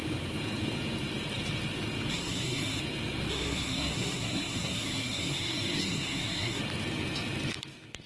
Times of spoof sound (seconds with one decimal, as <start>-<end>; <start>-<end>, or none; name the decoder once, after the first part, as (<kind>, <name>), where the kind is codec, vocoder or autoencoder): 2.1-2.8 (codec, SNAC); 3.3-6.6

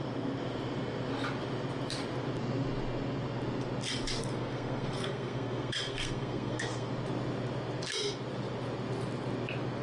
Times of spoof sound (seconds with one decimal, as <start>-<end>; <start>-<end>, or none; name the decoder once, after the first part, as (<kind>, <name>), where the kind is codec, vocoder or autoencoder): 4.2-6.9 (codec, SNAC)

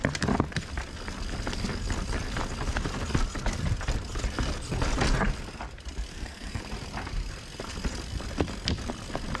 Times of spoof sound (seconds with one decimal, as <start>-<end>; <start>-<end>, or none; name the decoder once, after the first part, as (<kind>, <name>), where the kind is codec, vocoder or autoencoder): 6.1-6.6 (codec, SNAC)

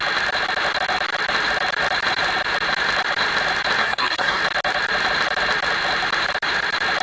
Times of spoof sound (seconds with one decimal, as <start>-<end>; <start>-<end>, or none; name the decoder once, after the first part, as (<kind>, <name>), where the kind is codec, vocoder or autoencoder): 3.8-4.4 (codec, SNAC)

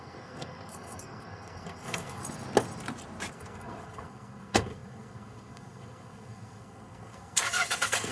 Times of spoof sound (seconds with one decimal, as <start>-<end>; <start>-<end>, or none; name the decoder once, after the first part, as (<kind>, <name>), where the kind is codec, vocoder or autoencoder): 0.0-2.2 (codec, SNAC); 3.3-8.1

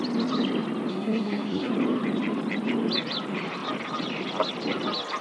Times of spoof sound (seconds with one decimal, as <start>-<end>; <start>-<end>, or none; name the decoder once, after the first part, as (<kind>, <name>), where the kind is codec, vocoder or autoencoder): 0.9-1.7 (codec, SNAC)

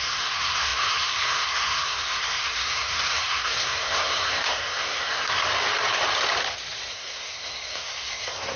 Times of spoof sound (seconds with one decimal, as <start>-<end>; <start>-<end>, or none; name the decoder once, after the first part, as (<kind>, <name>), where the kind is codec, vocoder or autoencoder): 0.0-5.4 (codec, SNAC); 6.9-8.6

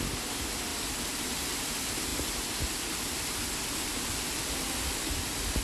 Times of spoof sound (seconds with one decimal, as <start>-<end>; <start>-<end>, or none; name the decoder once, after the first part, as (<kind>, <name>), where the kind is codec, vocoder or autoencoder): none